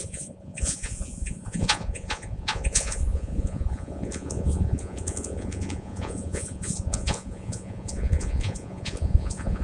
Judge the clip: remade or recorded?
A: remade